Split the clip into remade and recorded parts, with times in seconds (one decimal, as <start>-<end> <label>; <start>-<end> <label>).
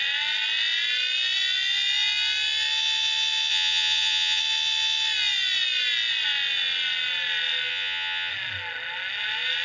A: 0.0-3.5 recorded; 3.5-4.4 remade; 4.4-7.7 recorded; 7.7-8.3 remade; 8.3-9.6 recorded